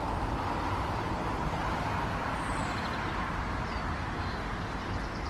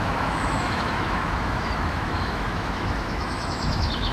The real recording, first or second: first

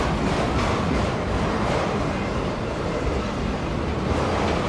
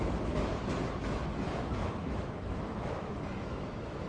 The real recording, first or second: first